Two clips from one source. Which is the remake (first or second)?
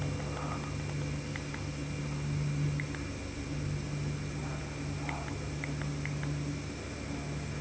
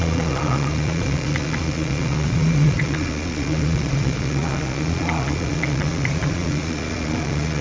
second